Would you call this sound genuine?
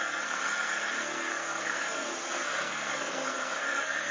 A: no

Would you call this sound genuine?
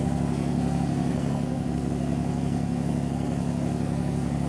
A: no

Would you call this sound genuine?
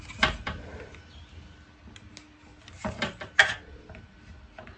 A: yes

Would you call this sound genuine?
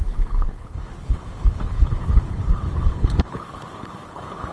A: no